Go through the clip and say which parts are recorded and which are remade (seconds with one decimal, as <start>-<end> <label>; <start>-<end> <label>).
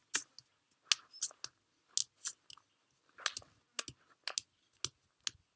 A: 0.0-5.6 recorded